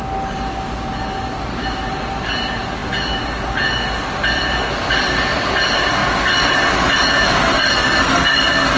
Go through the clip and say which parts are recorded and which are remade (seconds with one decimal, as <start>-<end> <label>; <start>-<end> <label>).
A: 0.0-7.5 recorded; 7.5-8.4 remade; 8.4-8.8 recorded